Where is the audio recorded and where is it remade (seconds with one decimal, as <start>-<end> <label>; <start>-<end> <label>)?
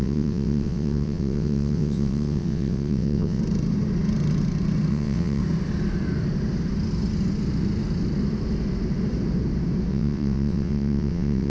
0.0-3.4 remade; 3.4-4.9 recorded; 4.9-5.4 remade; 5.4-9.9 recorded; 9.9-11.5 remade